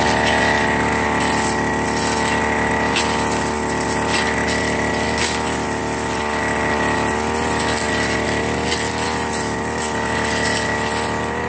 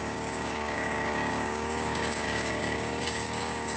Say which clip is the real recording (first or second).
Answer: first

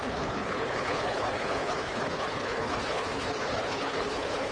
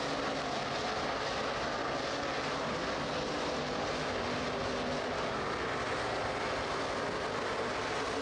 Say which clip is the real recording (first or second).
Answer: second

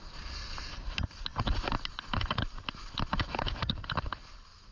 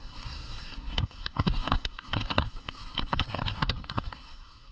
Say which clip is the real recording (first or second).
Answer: first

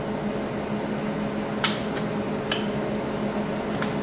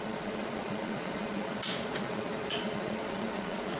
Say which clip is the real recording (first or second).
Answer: first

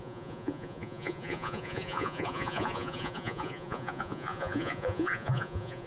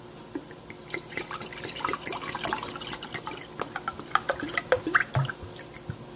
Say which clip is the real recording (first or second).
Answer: second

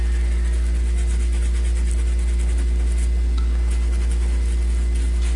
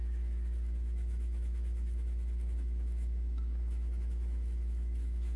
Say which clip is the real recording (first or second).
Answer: first